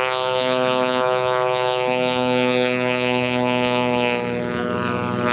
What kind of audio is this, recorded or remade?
remade